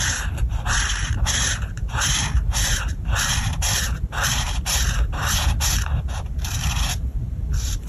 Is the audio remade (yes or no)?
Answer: yes